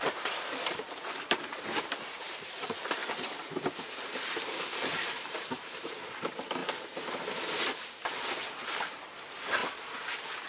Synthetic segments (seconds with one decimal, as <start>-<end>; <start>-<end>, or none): 0.0-3.0; 4.4-6.6; 8.7-9.6